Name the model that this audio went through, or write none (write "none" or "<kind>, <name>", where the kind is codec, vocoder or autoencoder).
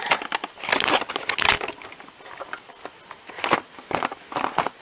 none